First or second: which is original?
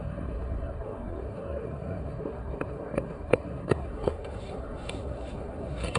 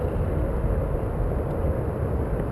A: second